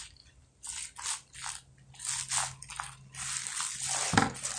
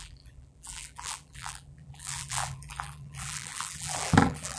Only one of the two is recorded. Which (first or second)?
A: first